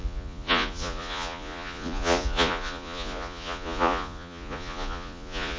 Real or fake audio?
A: fake